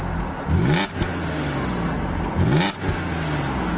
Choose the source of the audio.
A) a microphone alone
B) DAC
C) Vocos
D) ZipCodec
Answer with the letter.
A